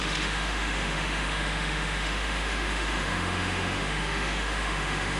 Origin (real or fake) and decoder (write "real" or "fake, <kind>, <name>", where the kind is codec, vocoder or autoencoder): fake, autoencoder, DAC-VAE